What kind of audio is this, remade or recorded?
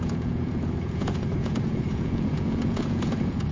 remade